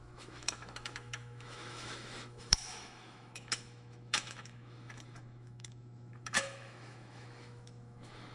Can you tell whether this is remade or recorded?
remade